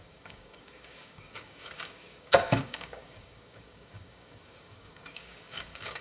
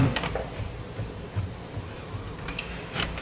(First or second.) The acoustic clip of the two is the second